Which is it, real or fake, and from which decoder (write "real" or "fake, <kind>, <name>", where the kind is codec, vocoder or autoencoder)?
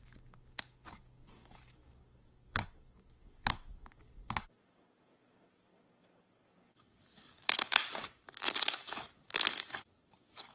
fake, codec, DAC